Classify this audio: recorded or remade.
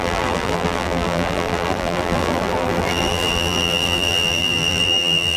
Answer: remade